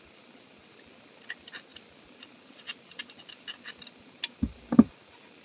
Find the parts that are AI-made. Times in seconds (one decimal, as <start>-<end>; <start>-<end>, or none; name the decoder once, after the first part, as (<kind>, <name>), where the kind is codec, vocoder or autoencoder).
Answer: none

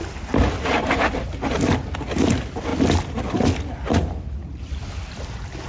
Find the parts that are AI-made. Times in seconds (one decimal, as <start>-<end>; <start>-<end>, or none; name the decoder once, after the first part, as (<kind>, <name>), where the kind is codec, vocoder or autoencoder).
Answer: none

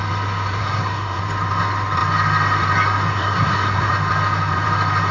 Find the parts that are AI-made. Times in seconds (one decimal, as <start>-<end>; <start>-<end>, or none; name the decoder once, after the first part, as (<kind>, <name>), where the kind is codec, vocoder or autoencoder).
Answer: 0.6-1.2 (codec, SNAC); 3.1-3.9

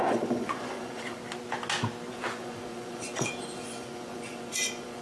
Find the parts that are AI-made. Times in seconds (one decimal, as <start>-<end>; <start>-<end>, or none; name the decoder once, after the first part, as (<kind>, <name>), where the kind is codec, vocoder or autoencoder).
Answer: 0.0-1.2 (vocoder, Vocos); 2.1-5.0

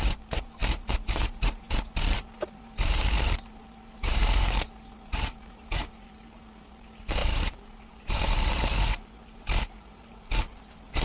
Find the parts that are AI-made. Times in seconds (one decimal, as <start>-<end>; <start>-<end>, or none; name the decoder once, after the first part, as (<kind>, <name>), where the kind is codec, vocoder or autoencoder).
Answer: 0.0-11.0 (vocoder, BigVGAN v2)

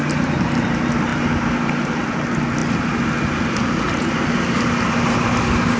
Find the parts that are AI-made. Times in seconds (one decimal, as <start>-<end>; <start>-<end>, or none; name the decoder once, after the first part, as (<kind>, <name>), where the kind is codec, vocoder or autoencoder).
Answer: none

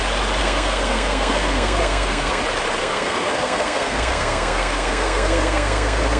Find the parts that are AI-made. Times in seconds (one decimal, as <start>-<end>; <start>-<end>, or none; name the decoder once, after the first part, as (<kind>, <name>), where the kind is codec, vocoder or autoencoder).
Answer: 0.4-2.4 (codec, SNAC); 2.8-6.2

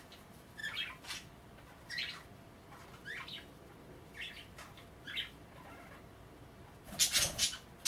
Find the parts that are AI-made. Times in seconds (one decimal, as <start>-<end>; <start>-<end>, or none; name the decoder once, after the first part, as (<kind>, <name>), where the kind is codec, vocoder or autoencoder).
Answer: none